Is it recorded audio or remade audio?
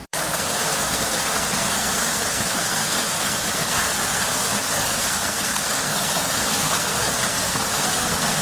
remade